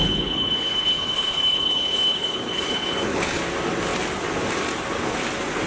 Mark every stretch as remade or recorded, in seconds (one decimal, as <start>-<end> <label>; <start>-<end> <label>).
0.0-3.4 remade; 3.4-5.7 recorded